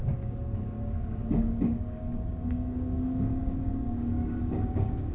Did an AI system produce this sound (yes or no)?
yes